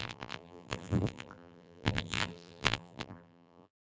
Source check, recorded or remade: remade